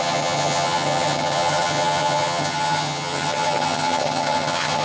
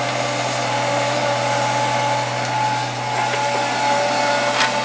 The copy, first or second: first